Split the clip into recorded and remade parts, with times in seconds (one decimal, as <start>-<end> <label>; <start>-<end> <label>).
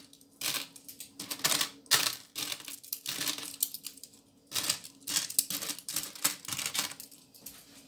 0.0-7.9 recorded